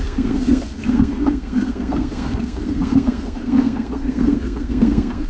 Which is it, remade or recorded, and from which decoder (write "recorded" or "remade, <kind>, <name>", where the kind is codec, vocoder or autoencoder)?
remade, codec, SNAC